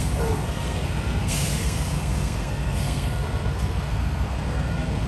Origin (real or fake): fake